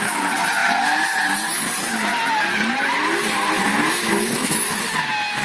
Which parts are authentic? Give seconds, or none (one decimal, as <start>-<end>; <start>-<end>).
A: 0.0-3.7; 4.8-5.4